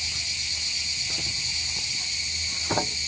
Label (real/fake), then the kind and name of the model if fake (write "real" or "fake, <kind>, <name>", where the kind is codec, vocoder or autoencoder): real